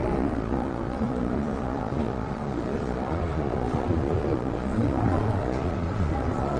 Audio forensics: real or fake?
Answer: fake